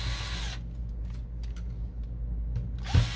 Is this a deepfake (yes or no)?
no